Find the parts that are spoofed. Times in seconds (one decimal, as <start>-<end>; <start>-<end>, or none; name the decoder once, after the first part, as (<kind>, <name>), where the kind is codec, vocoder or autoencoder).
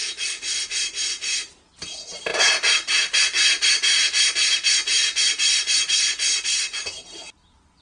none